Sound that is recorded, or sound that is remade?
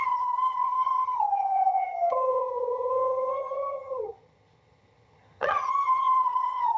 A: remade